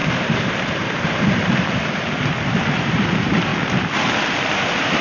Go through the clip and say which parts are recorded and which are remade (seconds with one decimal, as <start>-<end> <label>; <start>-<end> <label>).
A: 0.0-3.5 remade; 3.5-4.4 recorded; 4.4-5.0 remade